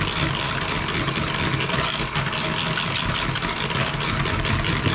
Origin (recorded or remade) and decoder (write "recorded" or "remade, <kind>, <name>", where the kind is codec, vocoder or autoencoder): recorded